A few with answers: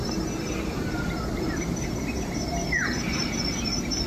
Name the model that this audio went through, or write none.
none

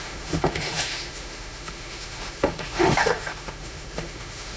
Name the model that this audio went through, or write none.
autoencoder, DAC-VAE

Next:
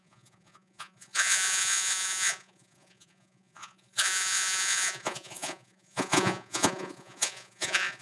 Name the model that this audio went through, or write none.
vocoder, Vocos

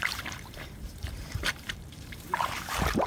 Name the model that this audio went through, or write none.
vocoder, BigVGAN v2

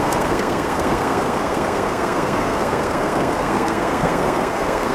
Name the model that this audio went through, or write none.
codec, SNAC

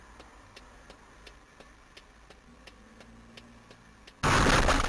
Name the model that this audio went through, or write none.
none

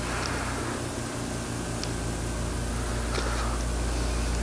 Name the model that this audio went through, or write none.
none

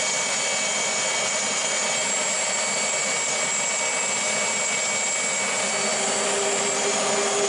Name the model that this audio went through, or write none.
none